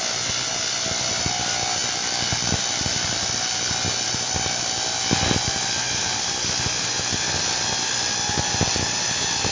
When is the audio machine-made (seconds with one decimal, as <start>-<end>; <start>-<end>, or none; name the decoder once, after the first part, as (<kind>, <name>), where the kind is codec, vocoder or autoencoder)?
none